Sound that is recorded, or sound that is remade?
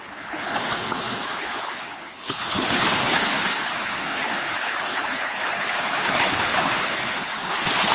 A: remade